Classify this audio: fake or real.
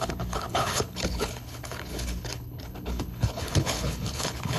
fake